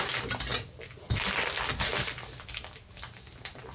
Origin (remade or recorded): recorded